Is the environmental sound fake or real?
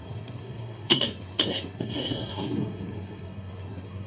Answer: fake